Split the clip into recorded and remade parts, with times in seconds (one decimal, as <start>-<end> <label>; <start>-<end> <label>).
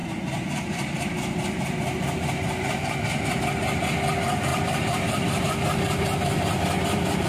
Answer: 0.0-3.4 remade; 3.4-4.5 recorded; 4.5-5.4 remade; 5.4-7.3 recorded